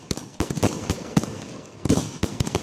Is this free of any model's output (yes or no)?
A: no